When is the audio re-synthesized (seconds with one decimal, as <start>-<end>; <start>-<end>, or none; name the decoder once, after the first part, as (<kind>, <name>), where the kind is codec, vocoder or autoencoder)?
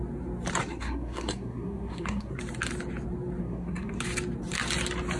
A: 0.6-2.4 (codec, SNAC); 3.4-4.0